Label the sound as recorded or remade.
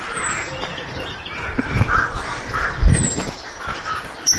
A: remade